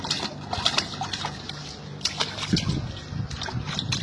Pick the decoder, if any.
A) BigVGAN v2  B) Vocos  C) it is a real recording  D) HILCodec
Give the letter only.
C